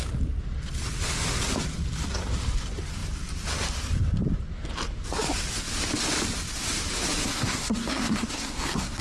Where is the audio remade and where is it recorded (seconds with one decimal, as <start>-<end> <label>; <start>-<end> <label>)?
0.0-7.3 recorded; 7.3-9.0 remade